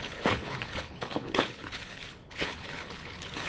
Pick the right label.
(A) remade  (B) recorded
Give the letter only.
A